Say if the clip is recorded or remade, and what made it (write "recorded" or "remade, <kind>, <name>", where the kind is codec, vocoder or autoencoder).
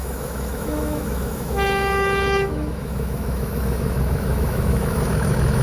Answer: remade, autoencoder, DAC-VAE